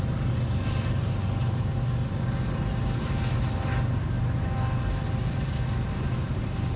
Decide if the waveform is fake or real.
real